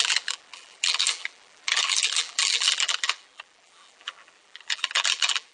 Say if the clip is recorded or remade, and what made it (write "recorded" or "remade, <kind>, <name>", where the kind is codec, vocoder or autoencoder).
remade, vocoder, BigVGAN v2